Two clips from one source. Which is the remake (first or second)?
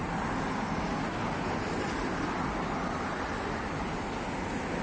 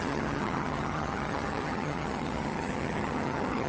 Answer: second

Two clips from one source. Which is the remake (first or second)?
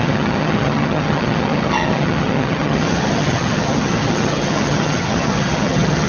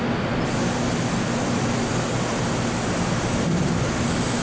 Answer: first